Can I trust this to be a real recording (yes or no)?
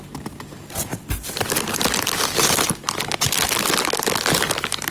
yes